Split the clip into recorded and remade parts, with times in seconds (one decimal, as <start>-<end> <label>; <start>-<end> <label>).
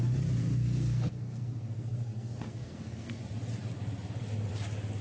0.0-0.4 recorded; 0.4-3.2 remade; 3.2-5.0 recorded